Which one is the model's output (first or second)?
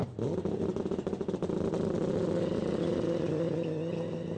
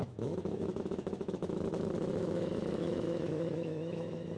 second